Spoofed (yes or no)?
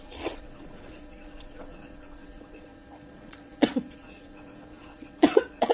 yes